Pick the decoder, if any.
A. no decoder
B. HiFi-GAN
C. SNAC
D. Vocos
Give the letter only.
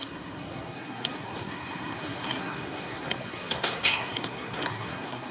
C